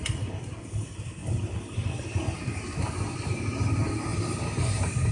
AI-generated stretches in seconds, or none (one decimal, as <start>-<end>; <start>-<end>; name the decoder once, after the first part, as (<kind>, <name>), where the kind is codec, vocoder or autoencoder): none